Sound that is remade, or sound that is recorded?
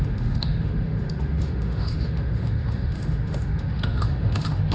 remade